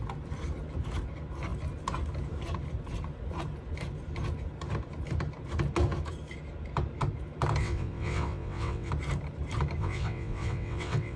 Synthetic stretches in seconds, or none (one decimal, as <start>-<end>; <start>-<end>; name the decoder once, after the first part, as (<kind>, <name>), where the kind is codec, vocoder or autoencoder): 7.6-8.9 (vocoder, WaveNeXt); 9.8-11.2